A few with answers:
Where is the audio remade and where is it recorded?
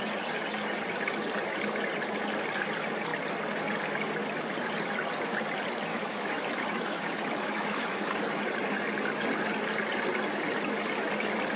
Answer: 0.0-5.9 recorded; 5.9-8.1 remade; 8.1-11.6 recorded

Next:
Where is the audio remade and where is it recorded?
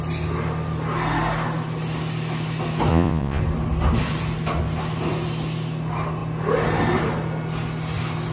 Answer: 0.0-2.9 recorded; 2.9-3.4 remade; 3.4-8.3 recorded